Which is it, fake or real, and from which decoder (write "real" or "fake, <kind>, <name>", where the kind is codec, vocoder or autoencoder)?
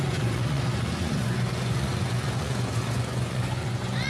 fake, vocoder, Vocos